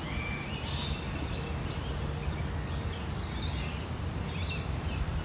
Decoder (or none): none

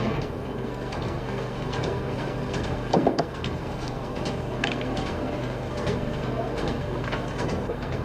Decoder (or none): codec, SNAC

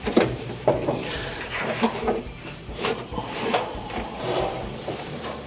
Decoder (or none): vocoder, BigVGAN v2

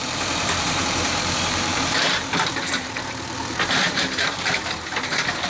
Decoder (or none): vocoder, BigVGAN v2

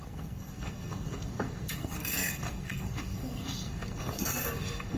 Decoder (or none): codec, SNAC